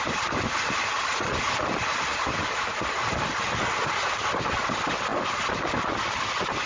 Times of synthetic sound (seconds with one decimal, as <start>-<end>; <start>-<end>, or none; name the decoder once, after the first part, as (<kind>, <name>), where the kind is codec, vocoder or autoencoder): none